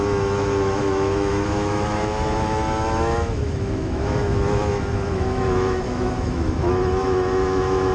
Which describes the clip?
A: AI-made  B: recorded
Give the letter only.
A